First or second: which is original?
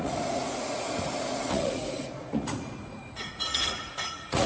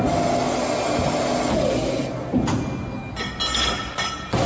second